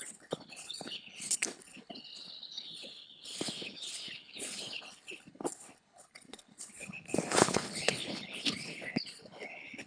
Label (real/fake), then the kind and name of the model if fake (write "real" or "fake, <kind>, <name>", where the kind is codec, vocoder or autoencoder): fake, codec, HILCodec